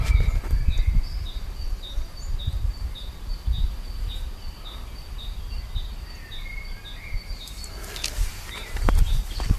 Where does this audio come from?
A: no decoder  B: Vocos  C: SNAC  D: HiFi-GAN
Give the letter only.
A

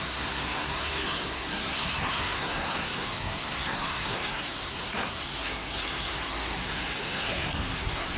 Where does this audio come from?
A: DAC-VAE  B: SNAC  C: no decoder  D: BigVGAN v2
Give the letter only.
B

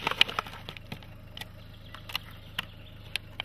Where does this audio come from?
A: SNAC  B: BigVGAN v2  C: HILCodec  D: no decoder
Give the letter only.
D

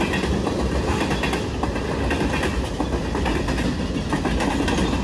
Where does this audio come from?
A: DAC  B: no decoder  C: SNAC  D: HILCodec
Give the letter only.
B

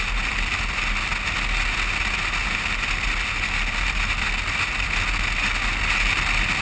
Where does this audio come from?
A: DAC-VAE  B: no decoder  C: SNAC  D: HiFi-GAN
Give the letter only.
B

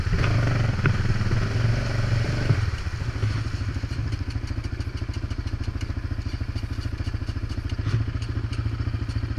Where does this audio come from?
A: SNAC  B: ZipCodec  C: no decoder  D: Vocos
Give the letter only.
C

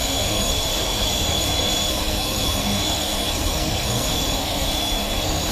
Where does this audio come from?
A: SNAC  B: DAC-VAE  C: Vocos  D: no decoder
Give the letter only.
A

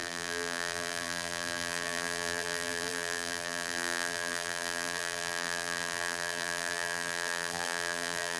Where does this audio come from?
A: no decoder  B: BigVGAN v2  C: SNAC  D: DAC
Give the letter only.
B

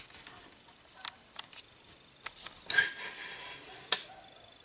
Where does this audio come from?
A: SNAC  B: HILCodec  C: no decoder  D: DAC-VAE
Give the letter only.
C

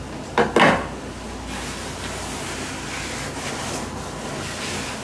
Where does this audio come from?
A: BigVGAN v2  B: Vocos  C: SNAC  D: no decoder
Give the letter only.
D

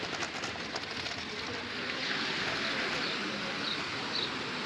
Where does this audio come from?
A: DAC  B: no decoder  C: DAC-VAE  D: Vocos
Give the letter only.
B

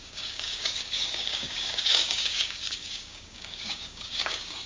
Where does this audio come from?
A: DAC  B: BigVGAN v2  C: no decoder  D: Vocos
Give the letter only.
A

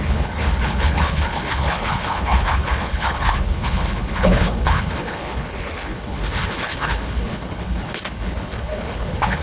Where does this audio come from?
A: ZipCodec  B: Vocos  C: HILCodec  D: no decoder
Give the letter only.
C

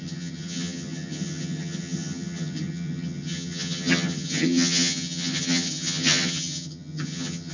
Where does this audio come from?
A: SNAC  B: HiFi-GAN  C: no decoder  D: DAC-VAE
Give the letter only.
B